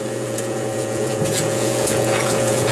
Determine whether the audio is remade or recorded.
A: remade